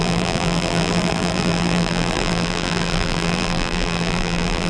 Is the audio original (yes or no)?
no